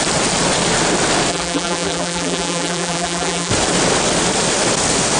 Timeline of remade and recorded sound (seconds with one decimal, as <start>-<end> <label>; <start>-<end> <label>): 0.0-1.3 recorded; 1.3-3.5 remade; 3.5-5.2 recorded